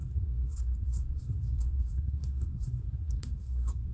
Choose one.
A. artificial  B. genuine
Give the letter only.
A